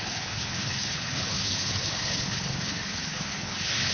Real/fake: fake